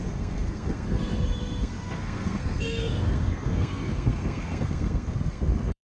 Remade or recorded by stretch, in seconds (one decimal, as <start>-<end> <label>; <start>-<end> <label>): 0.0-5.9 remade